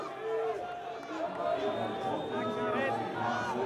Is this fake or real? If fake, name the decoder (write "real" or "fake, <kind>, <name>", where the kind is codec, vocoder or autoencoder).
real